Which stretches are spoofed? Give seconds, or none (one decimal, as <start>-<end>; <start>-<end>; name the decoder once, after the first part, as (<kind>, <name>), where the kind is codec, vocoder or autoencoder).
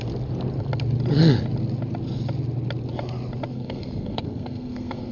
3.5-5.1 (codec, SNAC)